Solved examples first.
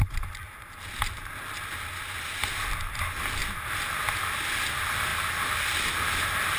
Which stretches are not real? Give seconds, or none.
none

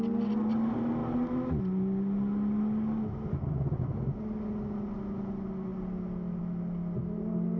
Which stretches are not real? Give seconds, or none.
none

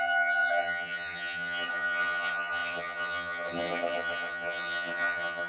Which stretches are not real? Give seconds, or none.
0.0-5.5 (vocoder, HiFi-GAN)

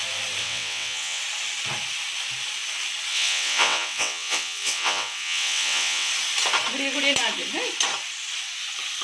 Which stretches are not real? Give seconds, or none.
0.4-1.2 (vocoder, WaveNeXt); 3.1-6.1

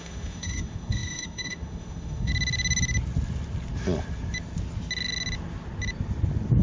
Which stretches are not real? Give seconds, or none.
0.0-2.3 (autoencoder, DAC-VAE)

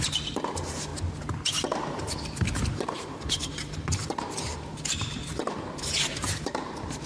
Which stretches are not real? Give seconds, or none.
0.0-0.9 (vocoder, BigVGAN v2); 1.6-7.1